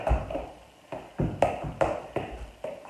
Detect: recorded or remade recorded